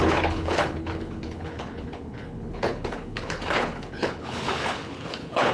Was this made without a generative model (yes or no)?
no